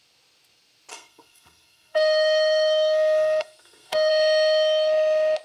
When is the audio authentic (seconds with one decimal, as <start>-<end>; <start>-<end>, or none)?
0.0-0.9; 4.1-5.4